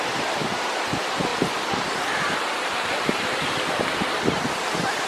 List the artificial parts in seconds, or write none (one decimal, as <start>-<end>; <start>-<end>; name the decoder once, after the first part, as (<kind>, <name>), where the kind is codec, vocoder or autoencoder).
none